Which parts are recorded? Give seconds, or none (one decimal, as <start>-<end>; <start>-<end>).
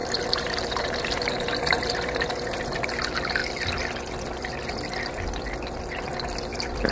2.6-6.9